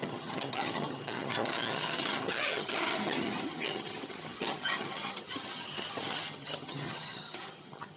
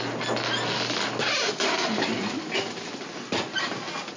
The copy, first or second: first